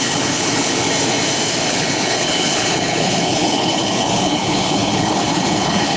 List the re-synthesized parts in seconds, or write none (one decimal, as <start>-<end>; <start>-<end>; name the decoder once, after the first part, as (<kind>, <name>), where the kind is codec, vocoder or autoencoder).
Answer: 0.0-0.9 (codec, HILCodec); 1.7-6.0